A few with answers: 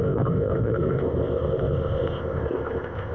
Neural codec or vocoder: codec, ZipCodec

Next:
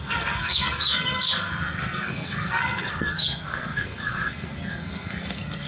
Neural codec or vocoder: codec, SNAC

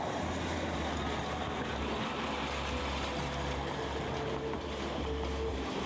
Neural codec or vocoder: none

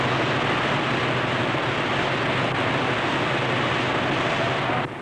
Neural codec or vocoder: none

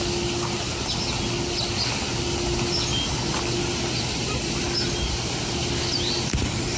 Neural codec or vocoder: none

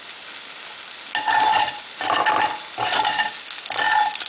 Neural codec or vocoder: none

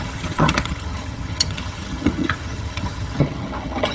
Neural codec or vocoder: vocoder, HiFi-GAN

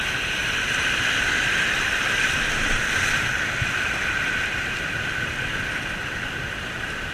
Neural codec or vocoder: none